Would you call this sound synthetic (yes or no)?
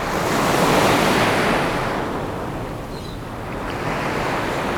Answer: no